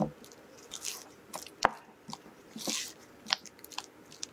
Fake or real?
real